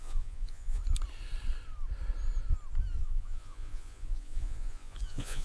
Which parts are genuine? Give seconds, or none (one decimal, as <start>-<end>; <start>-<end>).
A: 0.8-3.0